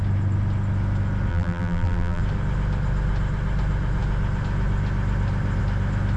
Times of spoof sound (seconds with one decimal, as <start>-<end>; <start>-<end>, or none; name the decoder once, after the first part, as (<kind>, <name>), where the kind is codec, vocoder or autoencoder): 1.3-2.2 (vocoder, BigVGAN v2)